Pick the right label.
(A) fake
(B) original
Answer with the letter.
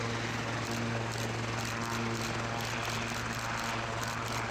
B